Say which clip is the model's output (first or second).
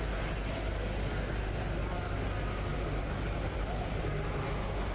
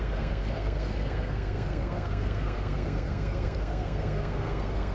second